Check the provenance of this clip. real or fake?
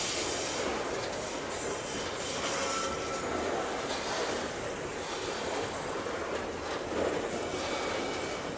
real